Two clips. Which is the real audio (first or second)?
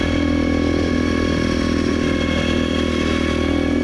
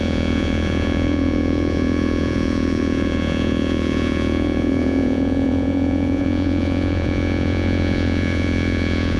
first